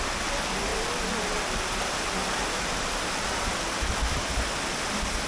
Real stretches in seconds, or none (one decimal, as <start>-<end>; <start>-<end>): 0.0-5.3